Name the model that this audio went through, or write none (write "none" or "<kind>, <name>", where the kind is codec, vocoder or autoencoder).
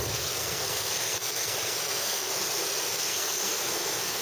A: codec, SNAC